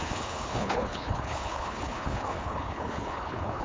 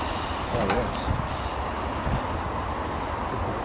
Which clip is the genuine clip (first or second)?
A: second